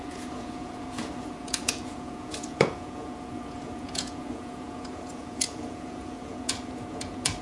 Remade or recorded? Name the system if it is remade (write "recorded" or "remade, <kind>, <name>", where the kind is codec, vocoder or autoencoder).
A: remade, vocoder, Vocos